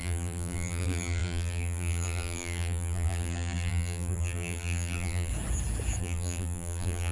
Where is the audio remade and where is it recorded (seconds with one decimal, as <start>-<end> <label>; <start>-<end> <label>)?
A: 0.0-5.3 remade; 5.3-6.0 recorded; 6.0-7.1 remade